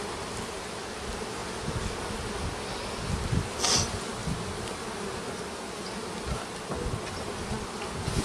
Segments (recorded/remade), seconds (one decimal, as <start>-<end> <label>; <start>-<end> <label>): 0.0-8.2 recorded